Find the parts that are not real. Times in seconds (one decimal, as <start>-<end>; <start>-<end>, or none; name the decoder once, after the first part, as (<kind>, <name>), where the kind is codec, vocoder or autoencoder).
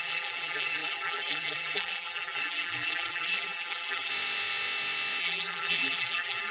0.0-4.1 (vocoder, BigVGAN v2); 5.2-6.5